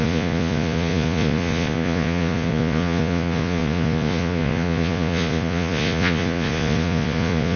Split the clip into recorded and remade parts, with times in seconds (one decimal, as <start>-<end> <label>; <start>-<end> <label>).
0.0-7.6 remade